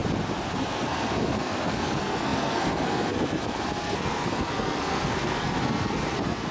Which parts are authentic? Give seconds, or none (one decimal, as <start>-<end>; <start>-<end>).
0.0-0.5